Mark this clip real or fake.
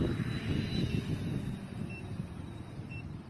real